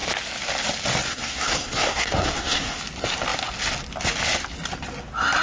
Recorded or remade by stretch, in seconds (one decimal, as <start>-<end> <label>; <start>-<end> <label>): 0.0-1.1 recorded; 1.1-2.8 remade; 2.8-5.4 recorded